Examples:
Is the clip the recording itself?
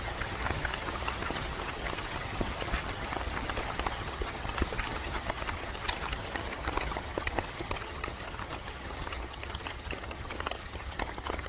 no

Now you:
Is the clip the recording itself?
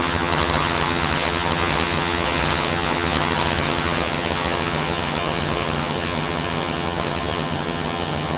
no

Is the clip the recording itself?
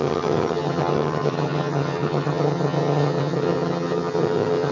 no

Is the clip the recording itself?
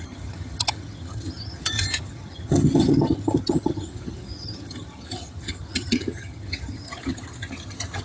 no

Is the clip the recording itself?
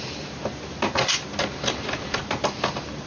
yes